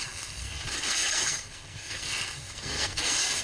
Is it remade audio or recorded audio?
remade